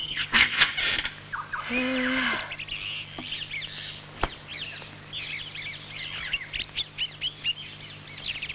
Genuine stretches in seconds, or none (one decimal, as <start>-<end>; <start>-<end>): 0.7-8.5